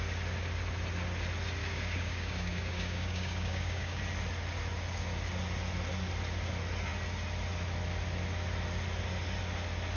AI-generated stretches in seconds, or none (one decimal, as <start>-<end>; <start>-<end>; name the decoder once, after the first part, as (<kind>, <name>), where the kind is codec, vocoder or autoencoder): 1.6-4.0 (codec, DAC)

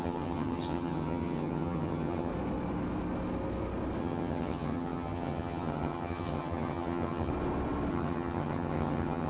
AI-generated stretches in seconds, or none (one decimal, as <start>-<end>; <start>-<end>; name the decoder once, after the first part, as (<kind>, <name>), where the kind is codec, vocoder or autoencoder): 0.0-2.3 (vocoder, HiFi-GAN); 4.0-7.3; 7.9-9.3

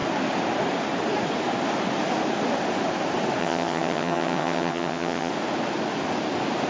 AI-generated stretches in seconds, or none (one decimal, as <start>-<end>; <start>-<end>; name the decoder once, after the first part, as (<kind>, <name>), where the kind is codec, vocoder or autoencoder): 3.4-5.3 (vocoder, HiFi-GAN)

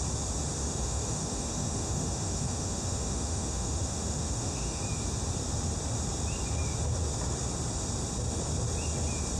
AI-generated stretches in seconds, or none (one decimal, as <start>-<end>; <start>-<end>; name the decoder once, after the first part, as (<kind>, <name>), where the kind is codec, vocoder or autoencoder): 0.6-4.8 (autoencoder, DAC-VAE)

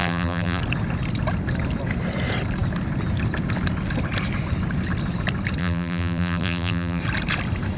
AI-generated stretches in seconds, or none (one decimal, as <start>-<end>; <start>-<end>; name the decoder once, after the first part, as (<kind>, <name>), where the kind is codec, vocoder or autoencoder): 0.0-0.6 (vocoder, BigVGAN v2); 5.6-7.0

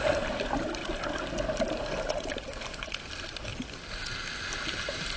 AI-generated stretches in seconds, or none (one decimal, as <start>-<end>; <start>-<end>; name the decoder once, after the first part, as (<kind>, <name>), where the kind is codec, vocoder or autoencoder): 0.0-0.8 (vocoder, BigVGAN v2); 1.7-3.5; 4.8-5.2

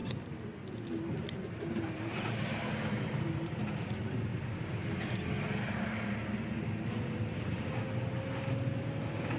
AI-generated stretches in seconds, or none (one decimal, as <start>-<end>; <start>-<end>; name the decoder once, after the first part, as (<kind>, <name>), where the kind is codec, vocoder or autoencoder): none